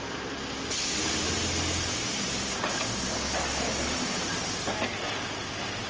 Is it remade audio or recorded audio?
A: recorded